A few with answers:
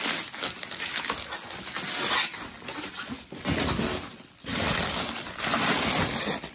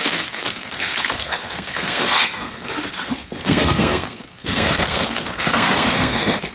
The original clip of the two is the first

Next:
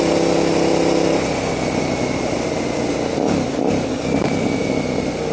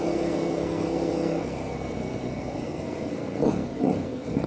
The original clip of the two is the first